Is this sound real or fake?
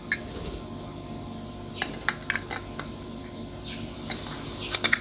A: real